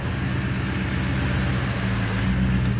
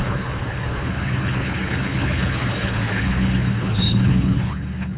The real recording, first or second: first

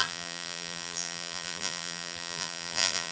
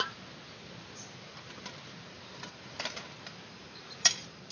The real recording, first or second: second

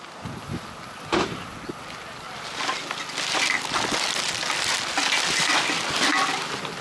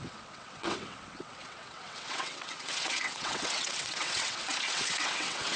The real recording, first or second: first